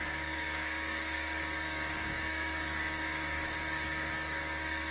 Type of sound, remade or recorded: remade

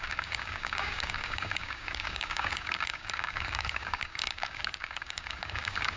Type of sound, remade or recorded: remade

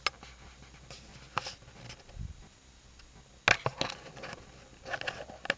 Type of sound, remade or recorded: recorded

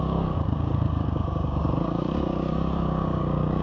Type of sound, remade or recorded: remade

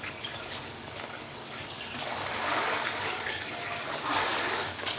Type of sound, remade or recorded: remade